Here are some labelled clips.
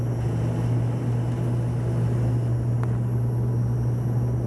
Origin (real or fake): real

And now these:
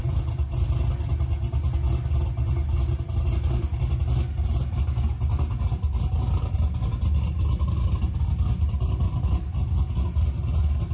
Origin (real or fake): real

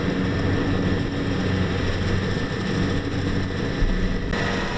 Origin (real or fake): real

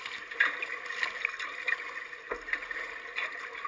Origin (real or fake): real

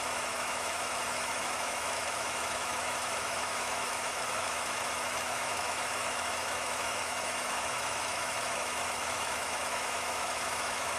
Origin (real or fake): fake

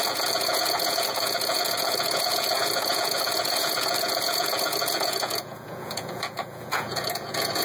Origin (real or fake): fake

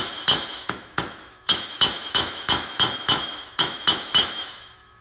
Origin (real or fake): fake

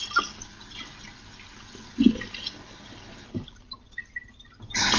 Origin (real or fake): real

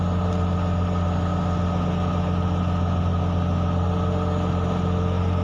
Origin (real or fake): real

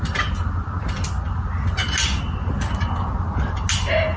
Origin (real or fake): real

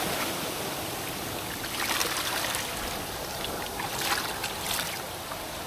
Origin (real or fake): real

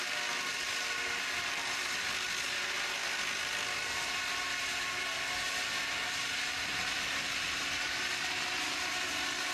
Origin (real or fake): real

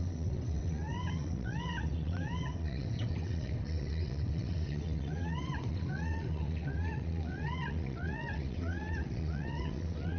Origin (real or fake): fake